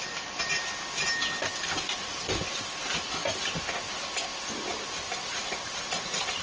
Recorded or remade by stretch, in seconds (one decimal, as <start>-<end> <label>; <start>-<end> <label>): 0.0-4.3 recorded; 4.3-6.4 remade